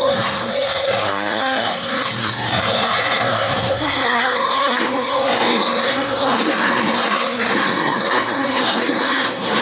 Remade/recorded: remade